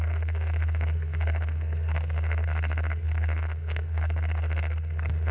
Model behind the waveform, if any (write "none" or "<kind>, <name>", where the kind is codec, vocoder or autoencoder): codec, SNAC